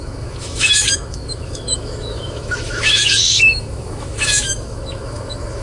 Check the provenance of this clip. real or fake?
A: fake